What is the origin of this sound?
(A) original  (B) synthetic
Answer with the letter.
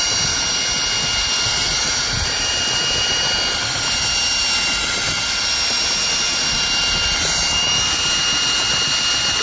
A